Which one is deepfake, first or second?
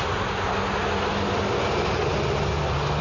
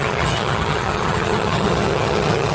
second